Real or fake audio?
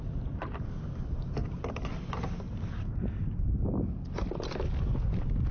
real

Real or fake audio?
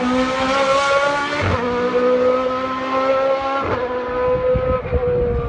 real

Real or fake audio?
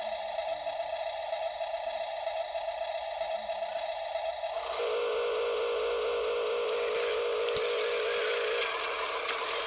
real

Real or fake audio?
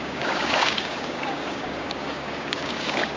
fake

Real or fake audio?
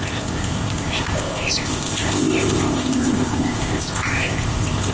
fake